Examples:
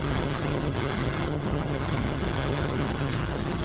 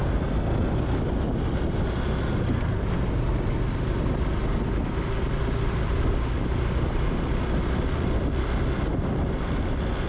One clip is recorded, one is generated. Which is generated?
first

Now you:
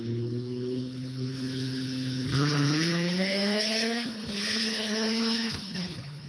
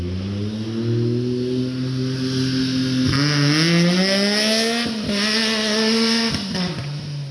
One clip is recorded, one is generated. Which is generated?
first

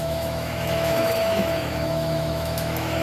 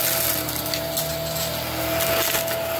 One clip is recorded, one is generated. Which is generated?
first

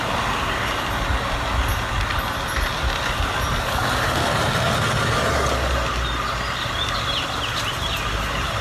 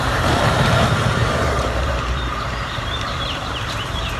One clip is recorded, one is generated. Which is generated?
second